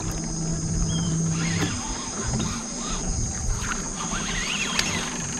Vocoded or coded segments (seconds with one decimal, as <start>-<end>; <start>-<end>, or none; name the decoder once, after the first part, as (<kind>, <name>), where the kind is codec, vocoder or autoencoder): 0.5-3.7 (vocoder, BigVGAN v2); 4.4-5.4